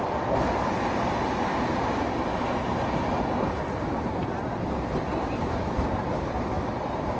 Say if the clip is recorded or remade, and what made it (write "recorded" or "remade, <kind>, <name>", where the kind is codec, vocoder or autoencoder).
recorded